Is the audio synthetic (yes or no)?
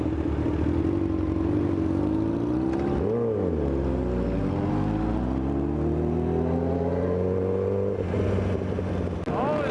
no